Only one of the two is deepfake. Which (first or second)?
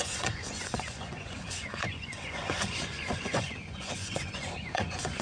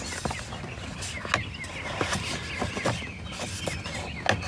first